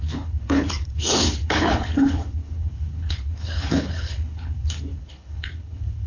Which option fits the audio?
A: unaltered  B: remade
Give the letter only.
B